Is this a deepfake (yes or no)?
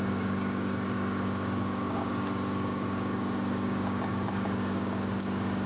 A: yes